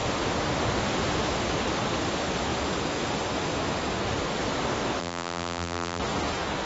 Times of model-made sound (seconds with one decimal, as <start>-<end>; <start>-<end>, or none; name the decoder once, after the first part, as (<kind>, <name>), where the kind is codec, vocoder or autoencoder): 5.0-6.0 (vocoder, BigVGAN v2)

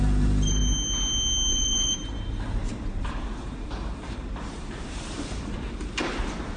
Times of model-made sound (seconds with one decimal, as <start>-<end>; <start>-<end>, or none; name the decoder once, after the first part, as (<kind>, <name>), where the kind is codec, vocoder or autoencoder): 0.0-0.6 (vocoder, BigVGAN v2); 1.5-6.6